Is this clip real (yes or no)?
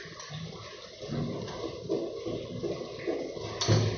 yes